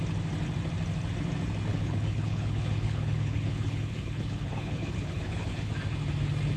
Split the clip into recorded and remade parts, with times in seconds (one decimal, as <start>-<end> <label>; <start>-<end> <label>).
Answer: 0.0-1.7 recorded; 1.7-5.7 remade; 5.7-6.6 recorded